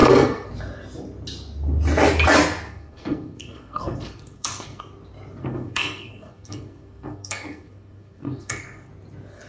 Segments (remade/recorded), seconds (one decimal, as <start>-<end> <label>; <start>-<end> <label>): 0.0-0.5 remade; 0.5-2.7 recorded; 2.7-4.8 remade; 4.8-5.4 recorded; 5.4-8.9 remade; 8.9-9.5 recorded